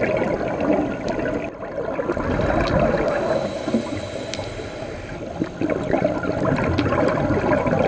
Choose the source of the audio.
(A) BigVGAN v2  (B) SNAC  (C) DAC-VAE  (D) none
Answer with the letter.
D